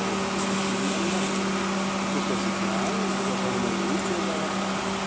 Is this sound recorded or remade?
recorded